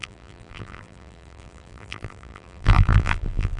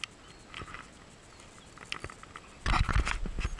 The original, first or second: second